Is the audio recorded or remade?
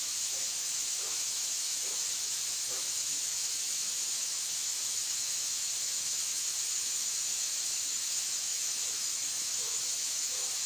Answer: remade